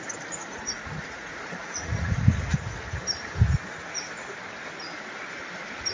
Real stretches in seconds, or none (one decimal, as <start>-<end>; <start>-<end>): 0.0-0.5; 2.2-5.9